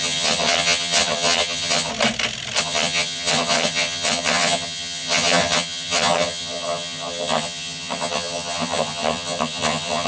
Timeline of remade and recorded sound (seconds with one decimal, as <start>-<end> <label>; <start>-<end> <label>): 0.0-1.9 remade; 1.9-2.6 recorded; 2.6-10.1 remade